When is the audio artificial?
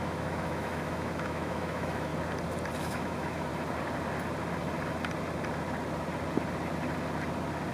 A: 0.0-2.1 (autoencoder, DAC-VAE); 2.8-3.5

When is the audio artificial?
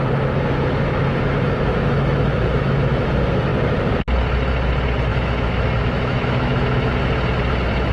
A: 1.7-3.1 (autoencoder, DAC-VAE); 5.1-6.9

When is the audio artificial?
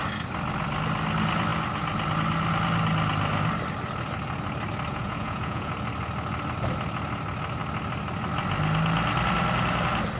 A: 4.9-5.7 (vocoder, Vocos)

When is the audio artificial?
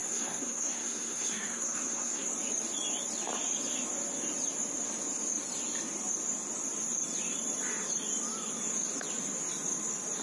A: 0.0-2.3 (codec, SNAC)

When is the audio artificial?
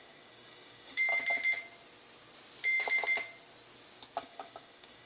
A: 0.0-1.1 (codec, DAC); 4.2-5.1